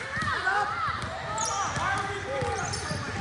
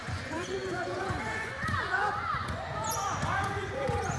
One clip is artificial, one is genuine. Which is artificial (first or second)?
second